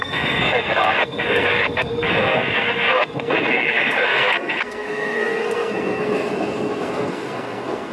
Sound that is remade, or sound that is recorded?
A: remade